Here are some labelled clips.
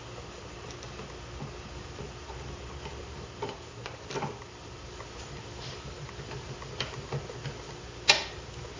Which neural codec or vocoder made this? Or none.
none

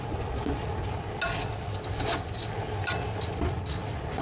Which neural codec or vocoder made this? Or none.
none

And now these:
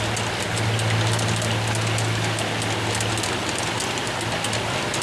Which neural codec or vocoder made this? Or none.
none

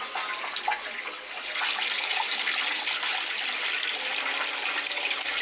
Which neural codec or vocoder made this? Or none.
none